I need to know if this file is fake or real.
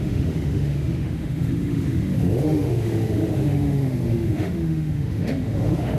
fake